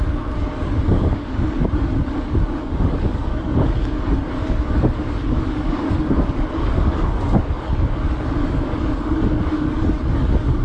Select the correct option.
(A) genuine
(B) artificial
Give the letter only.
B